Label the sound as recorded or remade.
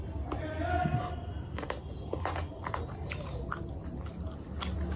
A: recorded